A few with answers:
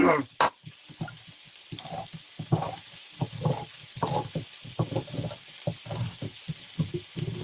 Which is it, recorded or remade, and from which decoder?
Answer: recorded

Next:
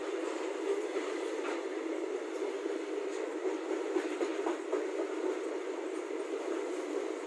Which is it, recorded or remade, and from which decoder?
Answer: recorded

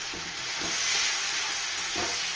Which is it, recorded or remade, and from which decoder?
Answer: recorded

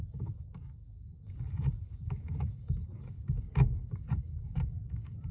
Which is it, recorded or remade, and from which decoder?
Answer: remade, codec, DAC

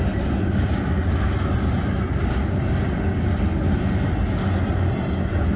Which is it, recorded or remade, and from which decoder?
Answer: recorded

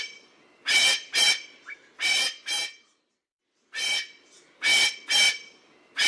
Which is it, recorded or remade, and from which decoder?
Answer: recorded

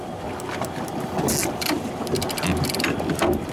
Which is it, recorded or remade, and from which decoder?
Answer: recorded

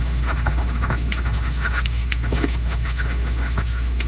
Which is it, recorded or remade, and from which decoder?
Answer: remade, autoencoder, DAC-VAE